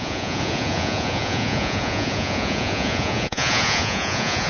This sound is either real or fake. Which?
fake